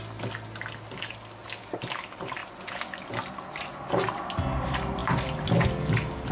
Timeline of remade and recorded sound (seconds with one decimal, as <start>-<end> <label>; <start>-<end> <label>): 0.0-6.3 recorded